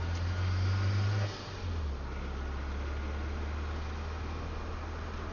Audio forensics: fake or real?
real